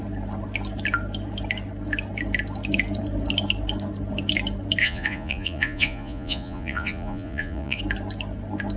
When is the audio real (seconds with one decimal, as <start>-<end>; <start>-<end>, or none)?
0.0-4.8; 7.8-8.8